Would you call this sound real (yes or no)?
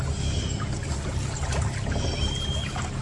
yes